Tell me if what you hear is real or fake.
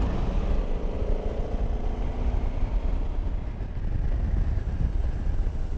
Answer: real